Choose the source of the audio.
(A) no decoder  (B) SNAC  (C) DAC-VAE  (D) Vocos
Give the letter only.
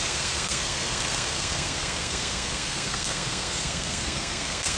B